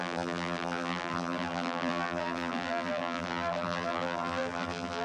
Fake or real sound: fake